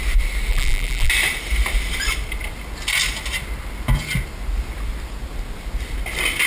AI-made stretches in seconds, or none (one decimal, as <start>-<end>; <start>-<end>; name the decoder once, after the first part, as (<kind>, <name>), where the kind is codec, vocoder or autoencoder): 0.5-1.1 (vocoder, BigVGAN v2)